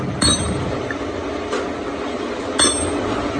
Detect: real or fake real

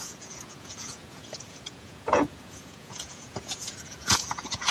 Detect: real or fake fake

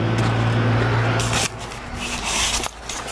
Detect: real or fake real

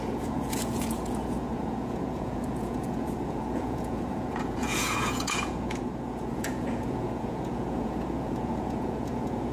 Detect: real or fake fake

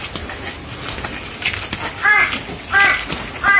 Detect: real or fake real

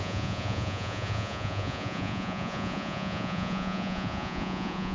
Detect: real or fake fake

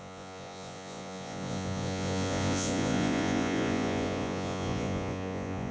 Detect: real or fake fake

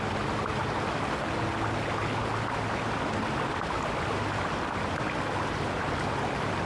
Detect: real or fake real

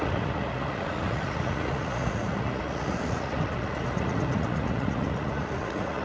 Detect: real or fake fake